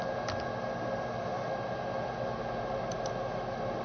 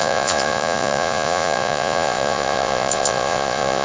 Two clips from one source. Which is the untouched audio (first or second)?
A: first